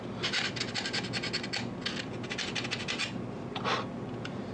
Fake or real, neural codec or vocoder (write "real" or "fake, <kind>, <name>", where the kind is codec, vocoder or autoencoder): real